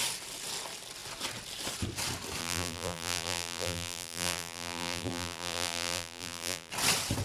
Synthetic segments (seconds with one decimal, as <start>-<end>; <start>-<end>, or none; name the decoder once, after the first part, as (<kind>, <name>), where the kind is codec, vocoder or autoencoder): 2.4-6.7 (vocoder, BigVGAN v2)